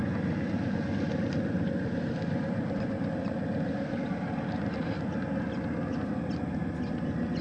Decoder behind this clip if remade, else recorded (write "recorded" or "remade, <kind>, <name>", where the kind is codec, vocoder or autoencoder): recorded